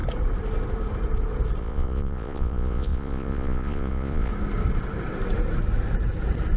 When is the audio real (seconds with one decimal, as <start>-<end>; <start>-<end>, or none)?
0.0-1.6; 4.3-6.6